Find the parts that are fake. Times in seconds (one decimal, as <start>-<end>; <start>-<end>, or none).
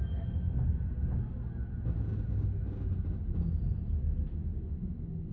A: none